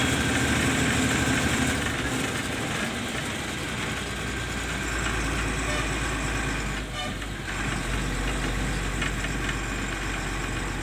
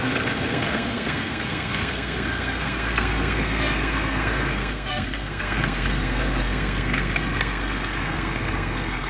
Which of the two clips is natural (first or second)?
first